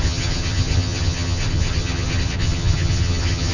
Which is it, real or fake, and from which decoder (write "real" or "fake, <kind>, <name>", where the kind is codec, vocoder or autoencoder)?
fake, vocoder, HiFi-GAN